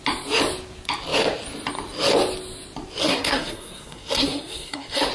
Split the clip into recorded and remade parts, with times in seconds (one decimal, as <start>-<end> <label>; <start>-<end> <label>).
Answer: 0.0-3.0 recorded; 3.0-5.1 remade